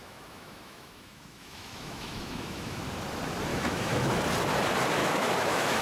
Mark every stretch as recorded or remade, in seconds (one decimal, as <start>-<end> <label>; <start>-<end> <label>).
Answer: 0.0-2.8 remade; 2.8-3.5 recorded; 3.5-4.2 remade; 4.2-5.0 recorded; 5.0-5.8 remade